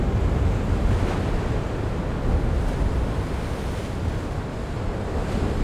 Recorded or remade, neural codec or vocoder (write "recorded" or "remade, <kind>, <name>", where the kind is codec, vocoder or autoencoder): recorded